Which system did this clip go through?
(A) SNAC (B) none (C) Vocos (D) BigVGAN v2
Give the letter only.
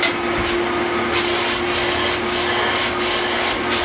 B